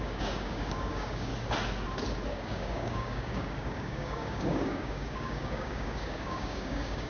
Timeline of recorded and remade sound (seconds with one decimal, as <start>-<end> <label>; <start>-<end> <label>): 0.0-1.3 remade; 1.3-2.3 recorded; 2.3-7.1 remade